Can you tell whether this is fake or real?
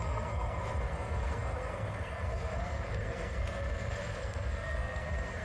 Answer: fake